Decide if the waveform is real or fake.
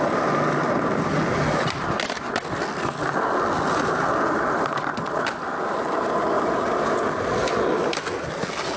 real